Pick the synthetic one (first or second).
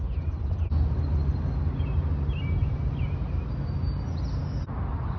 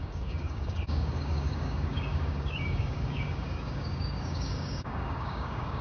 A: second